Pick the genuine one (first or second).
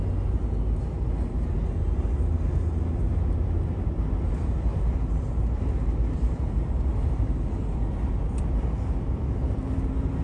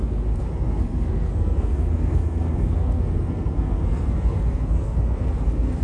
first